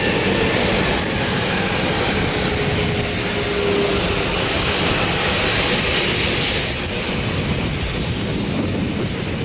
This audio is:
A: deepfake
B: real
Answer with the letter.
B